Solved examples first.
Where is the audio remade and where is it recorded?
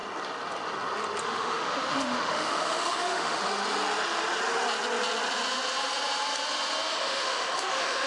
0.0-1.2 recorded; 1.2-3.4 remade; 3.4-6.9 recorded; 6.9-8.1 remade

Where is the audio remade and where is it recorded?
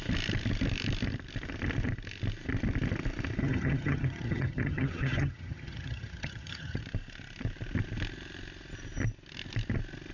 0.0-3.4 recorded; 3.4-6.8 remade; 6.8-10.1 recorded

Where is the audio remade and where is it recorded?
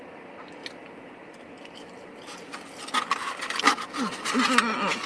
0.0-5.1 recorded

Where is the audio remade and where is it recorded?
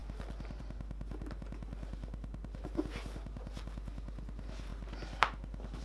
0.0-5.8 recorded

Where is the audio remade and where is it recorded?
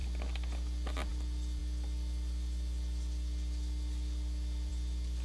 0.0-5.2 recorded